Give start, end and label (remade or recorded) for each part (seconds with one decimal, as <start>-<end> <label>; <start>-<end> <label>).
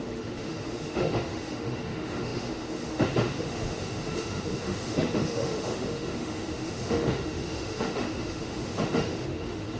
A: 0.0-9.8 remade